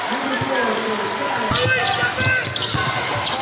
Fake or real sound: real